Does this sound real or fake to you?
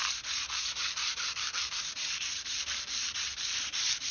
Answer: fake